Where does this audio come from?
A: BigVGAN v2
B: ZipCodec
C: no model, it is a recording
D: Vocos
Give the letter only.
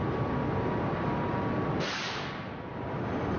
C